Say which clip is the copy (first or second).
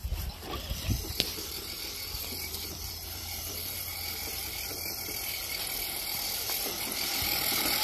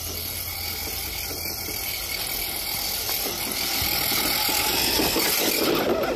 first